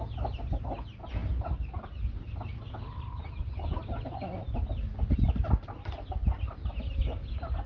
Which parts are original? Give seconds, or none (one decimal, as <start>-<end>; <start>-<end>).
0.0-7.7